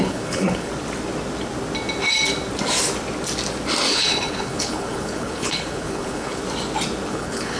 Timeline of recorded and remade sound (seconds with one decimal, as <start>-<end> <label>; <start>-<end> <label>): 0.0-0.7 remade; 0.7-3.9 recorded; 3.9-6.4 remade; 6.4-7.1 recorded; 7.1-7.6 remade